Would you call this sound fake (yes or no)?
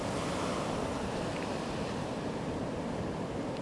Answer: no